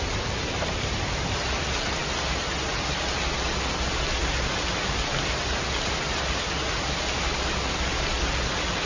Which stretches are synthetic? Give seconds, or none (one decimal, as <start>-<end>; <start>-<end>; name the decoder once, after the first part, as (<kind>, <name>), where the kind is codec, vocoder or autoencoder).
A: none